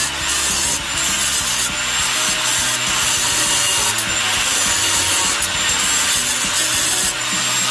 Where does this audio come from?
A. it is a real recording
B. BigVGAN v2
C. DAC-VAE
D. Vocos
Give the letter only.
A